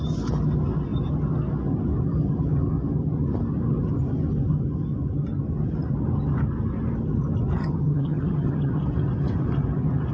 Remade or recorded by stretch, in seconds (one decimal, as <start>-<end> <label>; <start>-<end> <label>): 0.0-7.6 recorded; 7.6-8.8 remade; 8.8-10.1 recorded